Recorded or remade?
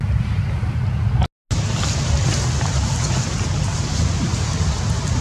recorded